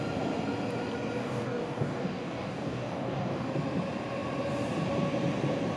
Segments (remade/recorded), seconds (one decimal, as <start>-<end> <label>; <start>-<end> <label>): 0.0-1.2 recorded; 1.2-3.5 remade; 3.5-5.8 recorded